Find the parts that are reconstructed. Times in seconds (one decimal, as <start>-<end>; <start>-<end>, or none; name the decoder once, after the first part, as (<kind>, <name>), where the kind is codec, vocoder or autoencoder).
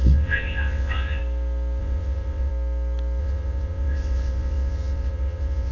0.0-1.2 (vocoder, WaveNeXt); 1.8-2.5; 3.2-5.7